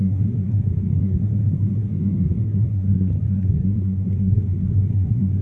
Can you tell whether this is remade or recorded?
remade